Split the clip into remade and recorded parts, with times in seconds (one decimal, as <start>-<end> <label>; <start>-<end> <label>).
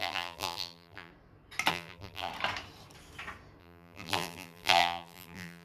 0.0-1.1 remade; 1.1-1.7 recorded; 1.7-2.3 remade; 2.3-3.6 recorded; 3.6-5.6 remade